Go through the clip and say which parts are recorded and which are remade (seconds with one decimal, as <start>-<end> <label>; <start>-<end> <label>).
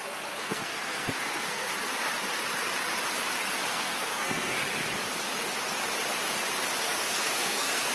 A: 0.0-1.7 remade; 1.7-3.7 recorded; 3.7-4.6 remade; 4.6-6.8 recorded; 6.8-7.9 remade